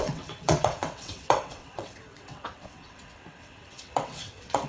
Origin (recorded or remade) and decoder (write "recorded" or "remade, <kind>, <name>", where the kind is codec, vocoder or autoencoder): remade, vocoder, WaveNeXt